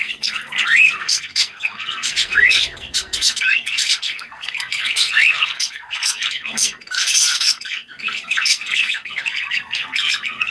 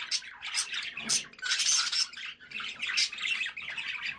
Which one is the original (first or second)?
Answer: second